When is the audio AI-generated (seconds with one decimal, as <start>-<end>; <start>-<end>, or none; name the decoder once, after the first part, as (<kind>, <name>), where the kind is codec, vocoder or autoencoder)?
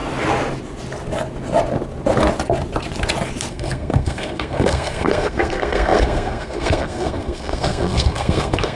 3.5-8.8 (codec, SNAC)